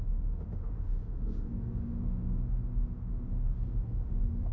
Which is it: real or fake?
fake